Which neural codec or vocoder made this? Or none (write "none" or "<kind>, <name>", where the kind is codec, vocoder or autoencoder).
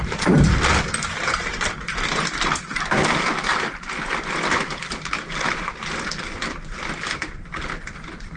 vocoder, BigVGAN v2